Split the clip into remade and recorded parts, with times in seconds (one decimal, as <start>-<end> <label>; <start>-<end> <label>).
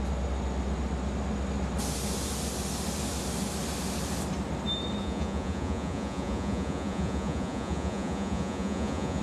0.0-5.0 recorded; 5.0-9.2 remade